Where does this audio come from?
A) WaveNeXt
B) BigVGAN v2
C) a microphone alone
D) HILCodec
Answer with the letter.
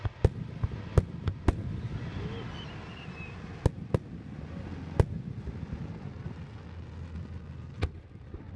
C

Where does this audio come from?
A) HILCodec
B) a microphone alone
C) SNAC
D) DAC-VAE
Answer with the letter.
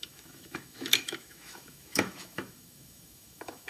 D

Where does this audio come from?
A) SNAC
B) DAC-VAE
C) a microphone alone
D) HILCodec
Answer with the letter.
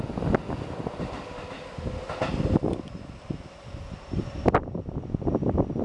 C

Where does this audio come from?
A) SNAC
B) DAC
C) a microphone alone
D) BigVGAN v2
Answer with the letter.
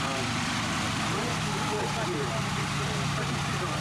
C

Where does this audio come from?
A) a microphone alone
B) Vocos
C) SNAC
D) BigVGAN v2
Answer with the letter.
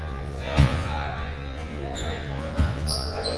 B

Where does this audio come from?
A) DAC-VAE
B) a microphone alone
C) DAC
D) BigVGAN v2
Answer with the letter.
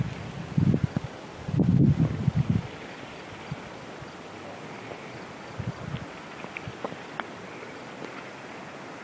B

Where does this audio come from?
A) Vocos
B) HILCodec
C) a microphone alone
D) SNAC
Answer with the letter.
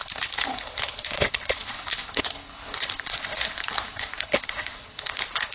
B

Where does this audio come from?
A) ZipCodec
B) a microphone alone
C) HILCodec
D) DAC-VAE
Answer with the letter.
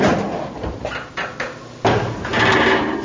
B